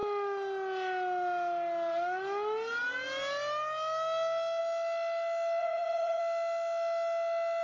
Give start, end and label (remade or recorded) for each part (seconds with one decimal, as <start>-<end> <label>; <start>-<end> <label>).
0.0-5.6 recorded; 5.6-6.2 remade; 6.2-7.6 recorded